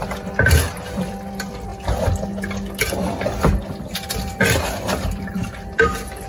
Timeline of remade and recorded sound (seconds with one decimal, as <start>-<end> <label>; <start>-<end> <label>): 0.0-6.3 recorded